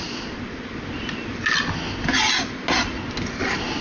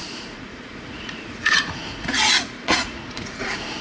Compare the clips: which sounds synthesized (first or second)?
second